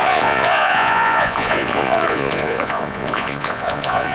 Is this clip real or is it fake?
fake